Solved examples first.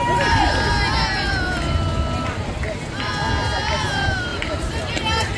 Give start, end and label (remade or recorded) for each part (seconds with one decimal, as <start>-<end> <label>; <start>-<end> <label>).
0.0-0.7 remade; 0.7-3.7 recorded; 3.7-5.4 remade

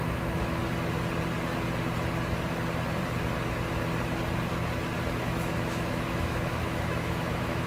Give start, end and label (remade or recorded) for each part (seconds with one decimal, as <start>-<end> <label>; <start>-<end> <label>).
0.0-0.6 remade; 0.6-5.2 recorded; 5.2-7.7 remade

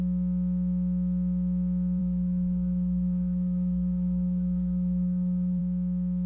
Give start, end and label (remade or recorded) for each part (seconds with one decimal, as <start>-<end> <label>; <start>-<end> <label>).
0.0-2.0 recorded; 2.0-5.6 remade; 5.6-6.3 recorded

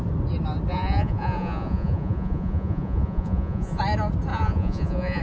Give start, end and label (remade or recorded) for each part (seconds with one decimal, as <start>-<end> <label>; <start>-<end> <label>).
0.0-0.7 recorded; 0.7-3.8 remade; 3.8-4.3 recorded; 4.3-5.2 remade

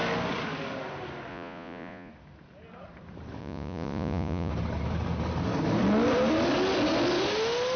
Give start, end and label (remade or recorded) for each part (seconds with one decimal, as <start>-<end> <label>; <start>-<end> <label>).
0.0-1.3 recorded; 1.3-2.1 remade; 2.1-3.4 recorded; 3.4-4.5 remade; 4.5-7.8 recorded

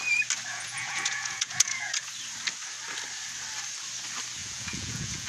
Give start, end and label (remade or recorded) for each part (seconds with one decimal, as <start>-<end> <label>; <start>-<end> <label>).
0.0-0.5 recorded; 0.5-2.1 remade; 2.1-4.4 recorded; 4.4-5.3 remade

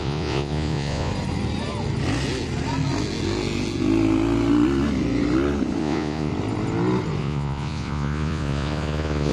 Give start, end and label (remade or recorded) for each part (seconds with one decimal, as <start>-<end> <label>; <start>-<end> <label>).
0.0-1.1 remade; 1.1-5.8 recorded; 5.8-6.3 remade; 6.3-7.2 recorded; 7.2-9.3 remade